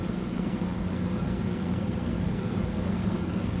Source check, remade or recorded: remade